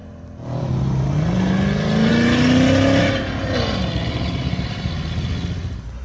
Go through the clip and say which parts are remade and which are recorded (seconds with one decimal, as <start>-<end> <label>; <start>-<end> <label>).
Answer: 0.0-3.0 recorded; 3.0-4.9 remade; 4.9-6.0 recorded